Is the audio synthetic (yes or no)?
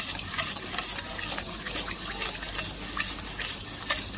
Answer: no